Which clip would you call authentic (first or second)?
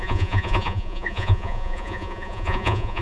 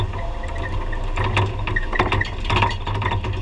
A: second